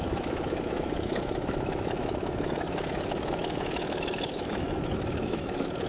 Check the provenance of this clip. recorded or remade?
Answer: remade